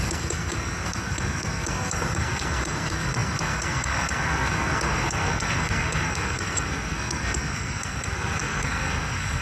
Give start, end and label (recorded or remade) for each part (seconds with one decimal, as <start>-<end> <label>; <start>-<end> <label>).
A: 0.0-9.4 remade